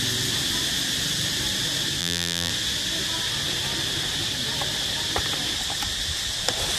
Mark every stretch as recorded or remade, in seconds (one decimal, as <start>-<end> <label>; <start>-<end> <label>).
0.0-2.0 recorded; 2.0-2.5 remade; 2.5-6.8 recorded